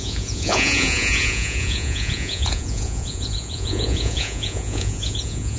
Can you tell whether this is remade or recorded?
remade